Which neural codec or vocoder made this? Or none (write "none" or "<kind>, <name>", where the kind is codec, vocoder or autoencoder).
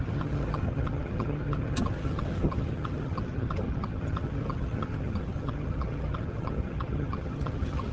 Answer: vocoder, HiFi-GAN